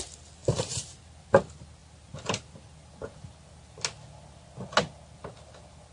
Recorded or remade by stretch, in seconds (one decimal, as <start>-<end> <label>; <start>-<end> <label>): 0.0-0.4 recorded; 0.4-1.0 remade; 1.0-5.9 recorded